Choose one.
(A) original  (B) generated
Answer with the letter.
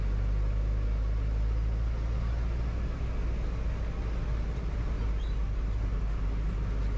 A